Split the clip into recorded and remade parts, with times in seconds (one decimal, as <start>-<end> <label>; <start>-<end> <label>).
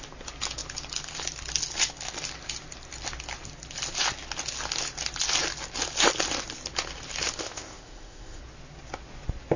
0.0-7.4 recorded; 7.4-8.4 remade; 8.4-9.6 recorded